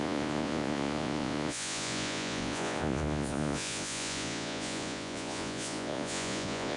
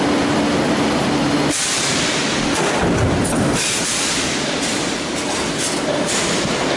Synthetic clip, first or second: first